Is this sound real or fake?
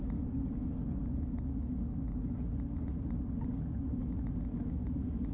real